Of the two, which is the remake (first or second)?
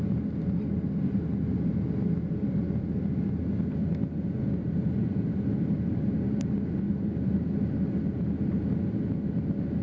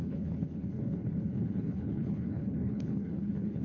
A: second